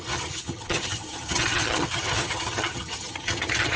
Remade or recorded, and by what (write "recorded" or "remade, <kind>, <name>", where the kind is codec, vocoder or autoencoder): remade, vocoder, HiFi-GAN